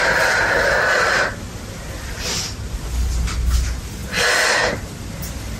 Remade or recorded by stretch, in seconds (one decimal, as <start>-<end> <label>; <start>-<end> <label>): 0.0-5.6 recorded